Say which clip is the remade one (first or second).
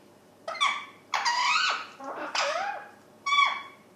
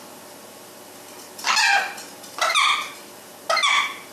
first